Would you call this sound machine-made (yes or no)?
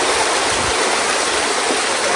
no